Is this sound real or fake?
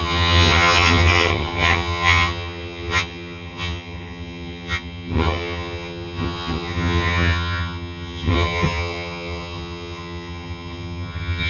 fake